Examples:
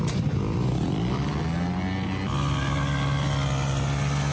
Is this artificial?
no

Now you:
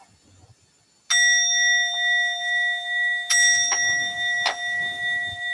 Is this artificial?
no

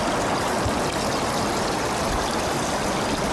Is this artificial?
no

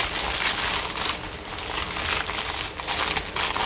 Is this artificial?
no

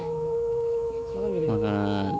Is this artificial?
yes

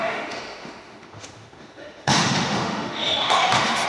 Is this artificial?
yes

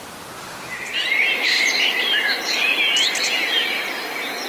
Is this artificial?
no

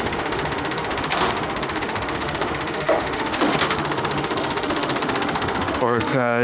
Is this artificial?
yes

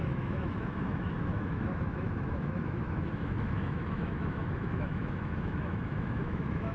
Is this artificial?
yes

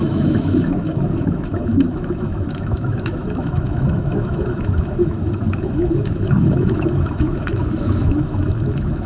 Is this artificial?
yes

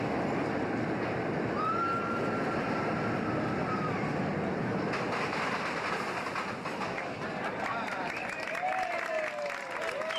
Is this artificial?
no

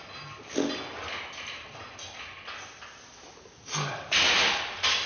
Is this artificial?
no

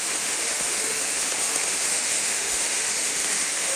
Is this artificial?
yes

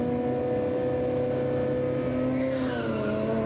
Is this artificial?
no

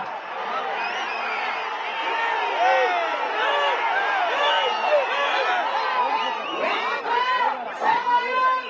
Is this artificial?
no